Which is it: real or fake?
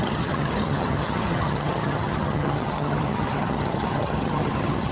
fake